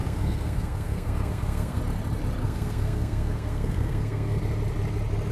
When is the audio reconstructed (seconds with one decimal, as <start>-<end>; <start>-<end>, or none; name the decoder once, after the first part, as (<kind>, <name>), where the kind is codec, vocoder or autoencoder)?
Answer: 0.0-1.8 (codec, SNAC); 2.4-4.4